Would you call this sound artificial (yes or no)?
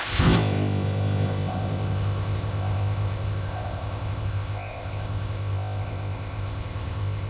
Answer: yes